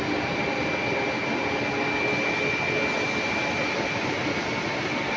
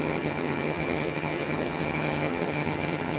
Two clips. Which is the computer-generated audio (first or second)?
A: second